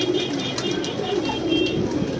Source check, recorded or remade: recorded